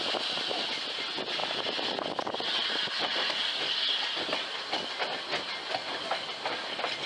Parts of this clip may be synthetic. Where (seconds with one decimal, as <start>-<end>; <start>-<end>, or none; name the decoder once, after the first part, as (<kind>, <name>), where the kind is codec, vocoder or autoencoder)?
none